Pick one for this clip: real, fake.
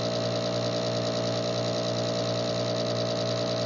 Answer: real